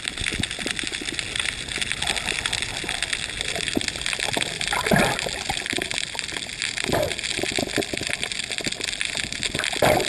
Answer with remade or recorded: recorded